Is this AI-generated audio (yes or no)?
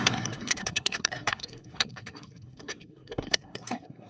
yes